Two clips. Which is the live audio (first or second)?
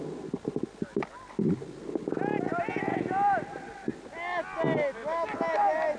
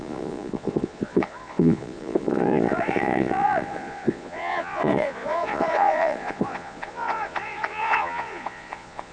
first